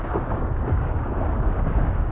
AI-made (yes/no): yes